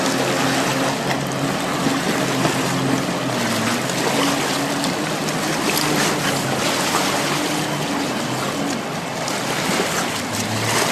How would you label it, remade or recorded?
recorded